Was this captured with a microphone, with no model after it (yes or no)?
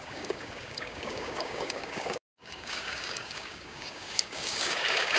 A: no